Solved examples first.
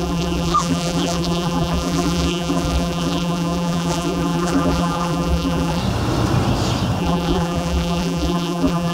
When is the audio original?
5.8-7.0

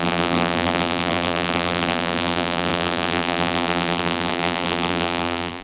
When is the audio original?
none

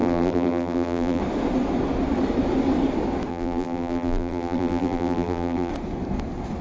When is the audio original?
1.2-3.3; 5.7-6.6